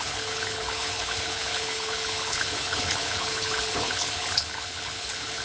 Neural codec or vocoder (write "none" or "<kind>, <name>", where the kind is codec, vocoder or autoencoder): codec, HILCodec